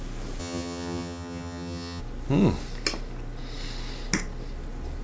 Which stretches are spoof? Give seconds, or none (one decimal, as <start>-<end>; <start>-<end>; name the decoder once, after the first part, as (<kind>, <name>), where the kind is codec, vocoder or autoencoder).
0.4-2.0 (vocoder, HiFi-GAN)